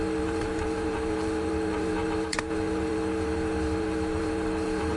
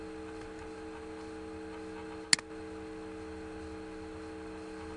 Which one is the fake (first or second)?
first